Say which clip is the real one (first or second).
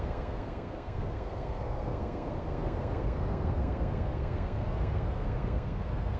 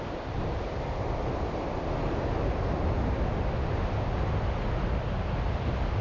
second